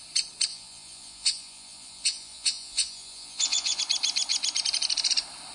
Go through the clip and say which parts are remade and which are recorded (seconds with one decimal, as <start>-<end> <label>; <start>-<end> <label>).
0.0-0.5 recorded; 0.5-3.8 remade; 3.8-5.5 recorded